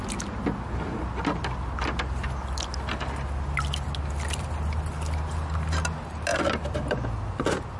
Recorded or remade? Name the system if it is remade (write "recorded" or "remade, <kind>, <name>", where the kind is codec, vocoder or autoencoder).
recorded